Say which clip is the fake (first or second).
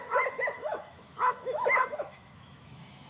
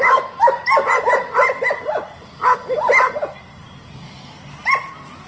first